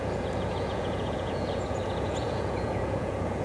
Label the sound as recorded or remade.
remade